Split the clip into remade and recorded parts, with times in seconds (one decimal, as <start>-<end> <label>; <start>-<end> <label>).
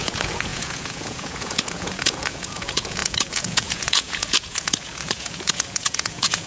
0.0-6.5 remade